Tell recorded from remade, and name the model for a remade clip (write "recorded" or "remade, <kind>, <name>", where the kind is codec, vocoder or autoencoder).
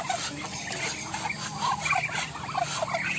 recorded